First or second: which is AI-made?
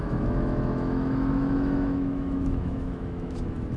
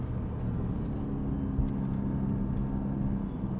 first